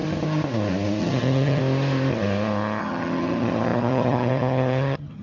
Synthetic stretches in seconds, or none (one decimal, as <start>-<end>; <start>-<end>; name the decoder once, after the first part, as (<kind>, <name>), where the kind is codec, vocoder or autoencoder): 1.0-1.6 (vocoder, HiFi-GAN); 2.8-5.2